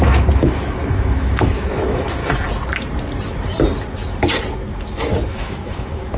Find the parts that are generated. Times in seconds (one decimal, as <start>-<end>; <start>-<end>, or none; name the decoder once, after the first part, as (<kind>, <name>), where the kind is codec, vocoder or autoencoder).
0.0-2.2 (autoencoder, DAC-VAE); 5.3-6.2